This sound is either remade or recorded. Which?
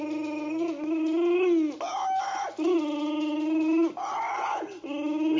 recorded